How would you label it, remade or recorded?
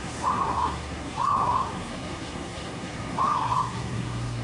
remade